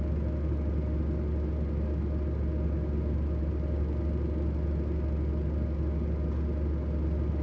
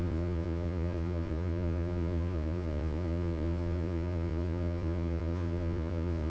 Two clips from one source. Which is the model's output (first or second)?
second